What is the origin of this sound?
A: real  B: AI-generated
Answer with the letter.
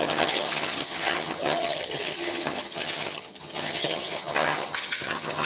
B